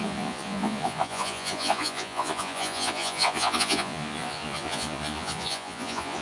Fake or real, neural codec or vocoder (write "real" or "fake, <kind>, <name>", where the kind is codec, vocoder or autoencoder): fake, vocoder, Vocos